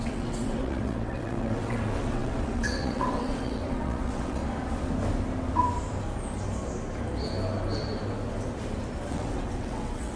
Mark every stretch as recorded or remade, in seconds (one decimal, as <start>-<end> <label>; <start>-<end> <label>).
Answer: 0.0-4.4 remade; 4.4-9.1 recorded; 9.1-10.2 remade